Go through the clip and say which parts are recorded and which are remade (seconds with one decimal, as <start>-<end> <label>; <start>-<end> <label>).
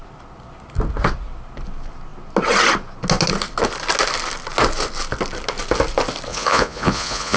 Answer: 0.0-6.3 recorded; 6.3-7.4 remade